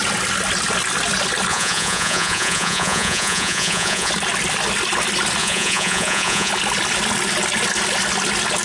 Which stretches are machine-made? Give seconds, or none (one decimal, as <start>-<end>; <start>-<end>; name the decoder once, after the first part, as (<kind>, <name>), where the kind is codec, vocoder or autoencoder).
1.5-4.1 (vocoder, Vocos); 5.4-6.5